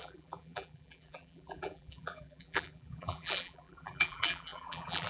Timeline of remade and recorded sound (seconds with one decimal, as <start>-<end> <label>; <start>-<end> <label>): 0.0-5.1 remade